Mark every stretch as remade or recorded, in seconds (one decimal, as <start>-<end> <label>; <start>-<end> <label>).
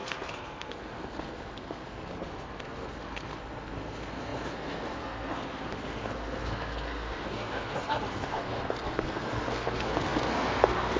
0.0-11.0 remade